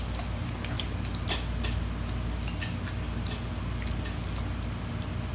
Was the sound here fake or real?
real